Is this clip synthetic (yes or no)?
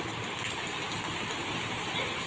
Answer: no